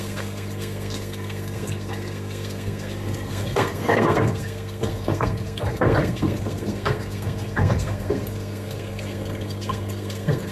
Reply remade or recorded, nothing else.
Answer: remade